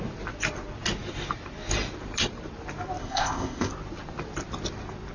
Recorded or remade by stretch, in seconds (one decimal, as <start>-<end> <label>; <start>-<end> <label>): 0.0-3.0 recorded; 3.0-3.7 remade; 3.7-5.1 recorded